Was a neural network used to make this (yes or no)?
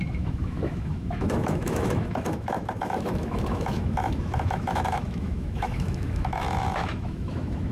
yes